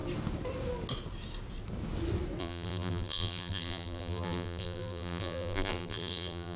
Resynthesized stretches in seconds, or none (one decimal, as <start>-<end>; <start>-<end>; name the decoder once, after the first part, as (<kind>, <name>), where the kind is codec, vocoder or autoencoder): 2.4-6.6 (vocoder, BigVGAN v2)